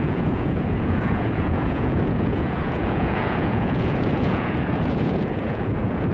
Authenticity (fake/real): fake